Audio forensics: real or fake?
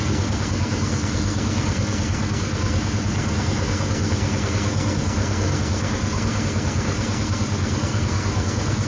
fake